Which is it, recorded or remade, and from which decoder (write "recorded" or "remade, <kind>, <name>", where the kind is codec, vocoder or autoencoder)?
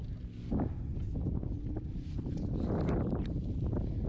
recorded